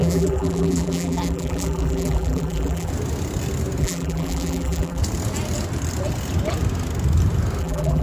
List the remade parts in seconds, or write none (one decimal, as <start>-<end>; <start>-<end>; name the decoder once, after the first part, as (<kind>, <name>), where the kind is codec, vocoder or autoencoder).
0.0-2.9 (vocoder, BigVGAN v2); 3.8-5.0; 7.6-8.0